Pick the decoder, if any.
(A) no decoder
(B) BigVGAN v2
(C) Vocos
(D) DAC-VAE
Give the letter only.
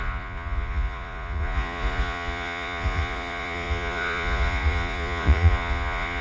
C